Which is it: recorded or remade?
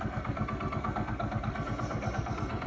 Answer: remade